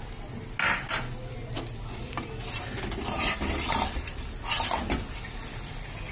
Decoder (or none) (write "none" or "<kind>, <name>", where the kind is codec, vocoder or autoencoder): none